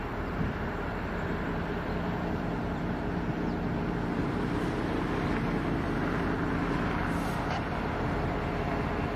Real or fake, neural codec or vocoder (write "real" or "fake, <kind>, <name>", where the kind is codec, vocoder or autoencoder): real